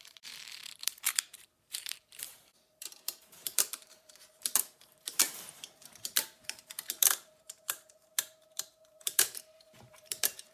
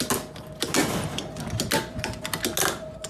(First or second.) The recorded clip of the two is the second